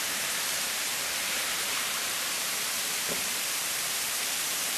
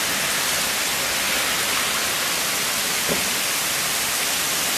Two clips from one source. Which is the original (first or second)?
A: second